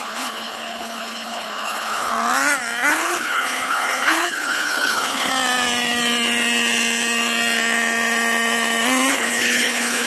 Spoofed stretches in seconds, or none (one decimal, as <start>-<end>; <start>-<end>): 0.0-2.1; 2.9-5.3; 9.1-10.1

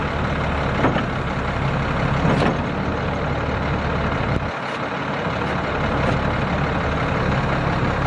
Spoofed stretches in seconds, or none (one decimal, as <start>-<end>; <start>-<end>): none

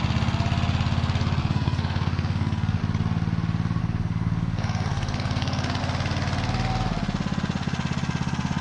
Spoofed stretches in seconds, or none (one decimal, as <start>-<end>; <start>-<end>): 1.4-2.8; 3.8-5.8

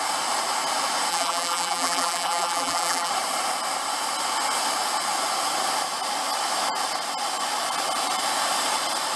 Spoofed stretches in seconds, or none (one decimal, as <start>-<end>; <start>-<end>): 1.1-3.1

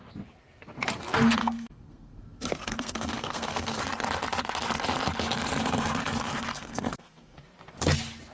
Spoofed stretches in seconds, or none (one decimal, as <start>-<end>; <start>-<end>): 1.4-3.8; 6.5-7.4

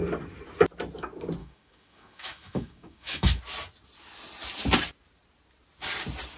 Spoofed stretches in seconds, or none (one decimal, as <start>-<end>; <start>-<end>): 1.4-3.4

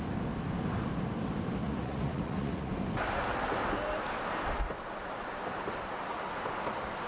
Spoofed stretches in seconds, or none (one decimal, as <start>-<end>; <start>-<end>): 1.6-2.7